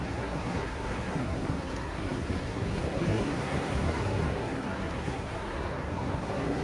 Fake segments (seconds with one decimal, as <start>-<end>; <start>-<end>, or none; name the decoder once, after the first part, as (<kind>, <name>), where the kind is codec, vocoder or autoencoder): 0.0-6.6 (codec, SNAC)